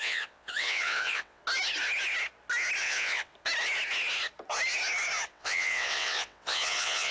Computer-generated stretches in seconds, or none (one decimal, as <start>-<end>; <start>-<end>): 0.0-1.4; 2.8-3.3; 5.3-7.1